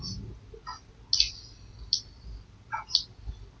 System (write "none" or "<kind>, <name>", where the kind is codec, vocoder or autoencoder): none